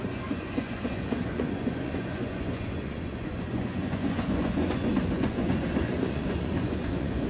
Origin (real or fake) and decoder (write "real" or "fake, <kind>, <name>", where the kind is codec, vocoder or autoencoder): fake, vocoder, Vocos